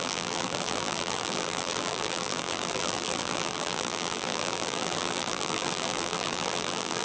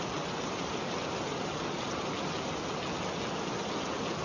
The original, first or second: second